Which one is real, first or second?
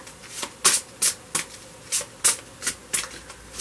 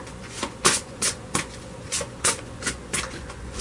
first